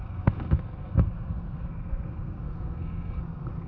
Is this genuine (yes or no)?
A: no